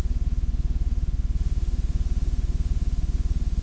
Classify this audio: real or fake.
fake